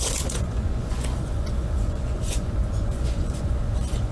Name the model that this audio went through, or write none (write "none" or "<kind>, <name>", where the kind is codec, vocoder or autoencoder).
vocoder, Vocos